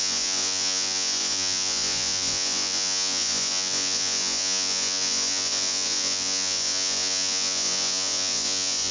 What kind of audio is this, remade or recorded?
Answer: remade